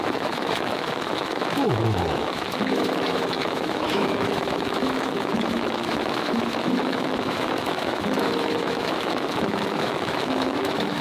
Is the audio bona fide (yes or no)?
no